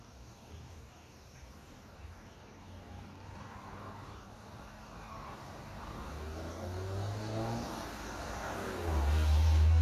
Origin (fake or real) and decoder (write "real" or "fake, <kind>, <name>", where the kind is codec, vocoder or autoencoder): fake, codec, DAC